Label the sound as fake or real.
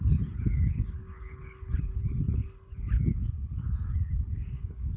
fake